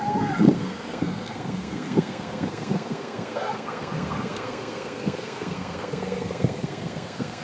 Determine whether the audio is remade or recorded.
remade